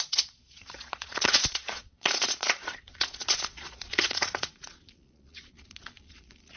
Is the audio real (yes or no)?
no